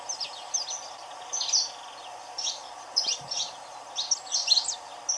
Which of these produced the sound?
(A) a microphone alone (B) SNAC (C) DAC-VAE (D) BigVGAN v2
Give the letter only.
A